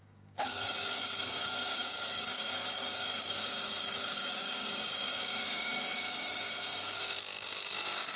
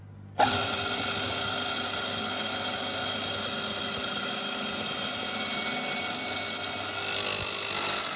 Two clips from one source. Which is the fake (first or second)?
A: first